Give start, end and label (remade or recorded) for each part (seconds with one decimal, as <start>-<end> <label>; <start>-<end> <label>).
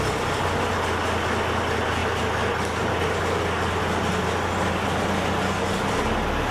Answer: 0.0-6.5 recorded